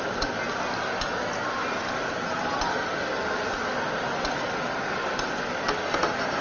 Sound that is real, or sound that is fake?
real